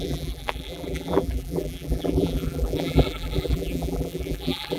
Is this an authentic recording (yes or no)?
no